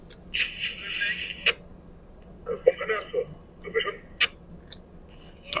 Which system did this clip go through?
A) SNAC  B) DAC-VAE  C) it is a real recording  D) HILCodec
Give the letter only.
C